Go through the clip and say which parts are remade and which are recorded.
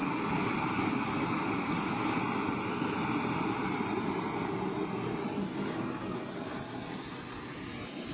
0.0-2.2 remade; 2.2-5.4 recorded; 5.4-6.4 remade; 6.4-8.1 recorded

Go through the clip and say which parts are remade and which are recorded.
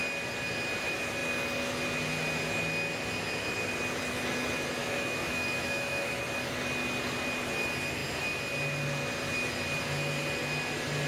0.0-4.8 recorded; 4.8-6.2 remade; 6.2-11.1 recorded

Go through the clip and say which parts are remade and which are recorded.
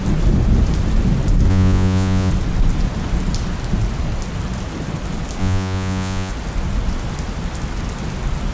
0.0-1.5 recorded; 1.5-2.3 remade; 2.3-5.4 recorded; 5.4-6.3 remade; 6.3-8.5 recorded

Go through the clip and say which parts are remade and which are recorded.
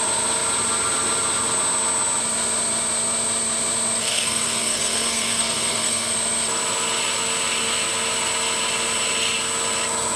0.0-4.0 recorded; 4.0-6.1 remade; 6.1-10.2 recorded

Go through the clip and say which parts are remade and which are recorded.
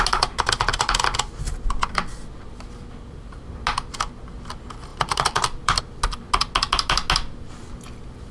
0.0-4.9 recorded; 4.9-5.8 remade; 5.8-8.3 recorded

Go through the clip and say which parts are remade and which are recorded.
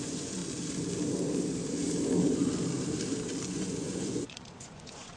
0.0-0.4 remade; 0.4-3.5 recorded; 3.5-5.2 remade